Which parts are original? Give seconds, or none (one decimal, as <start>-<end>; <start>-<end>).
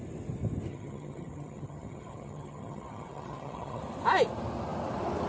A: 0.0-0.7; 3.8-5.3